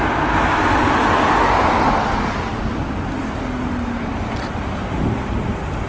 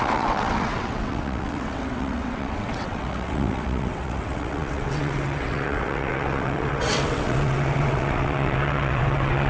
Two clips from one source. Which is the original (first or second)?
first